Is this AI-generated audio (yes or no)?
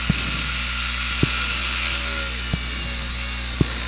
no